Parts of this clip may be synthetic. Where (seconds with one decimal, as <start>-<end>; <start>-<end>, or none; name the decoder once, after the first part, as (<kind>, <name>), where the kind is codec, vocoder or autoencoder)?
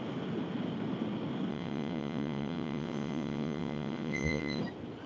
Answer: 1.5-4.6 (vocoder, WaveNeXt)